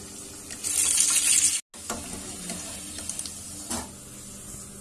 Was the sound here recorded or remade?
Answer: recorded